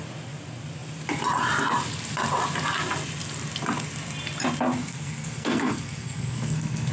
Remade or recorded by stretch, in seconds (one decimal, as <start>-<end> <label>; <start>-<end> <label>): 0.0-4.8 recorded; 4.8-6.9 remade